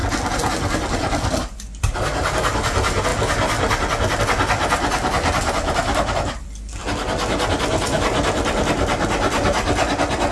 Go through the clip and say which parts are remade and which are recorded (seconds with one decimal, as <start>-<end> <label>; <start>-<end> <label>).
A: 0.0-0.5 recorded; 0.5-3.1 remade; 3.1-4.2 recorded; 4.2-6.8 remade; 6.8-7.5 recorded; 7.5-10.3 remade

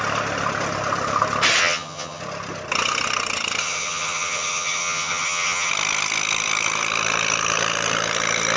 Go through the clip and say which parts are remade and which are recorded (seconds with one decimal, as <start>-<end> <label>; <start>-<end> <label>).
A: 0.0-1.6 recorded; 1.6-2.2 remade; 2.2-3.6 recorded; 3.6-5.7 remade; 5.7-8.6 recorded

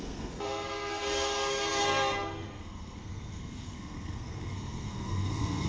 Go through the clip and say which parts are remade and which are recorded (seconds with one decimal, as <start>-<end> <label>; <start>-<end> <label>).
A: 0.0-5.7 remade

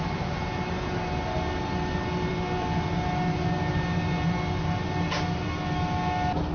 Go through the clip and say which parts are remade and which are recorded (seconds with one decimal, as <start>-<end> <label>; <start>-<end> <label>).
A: 0.0-6.5 recorded